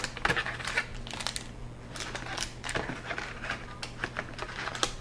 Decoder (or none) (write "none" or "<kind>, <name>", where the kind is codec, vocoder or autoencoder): none